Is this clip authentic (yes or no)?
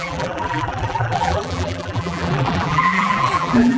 no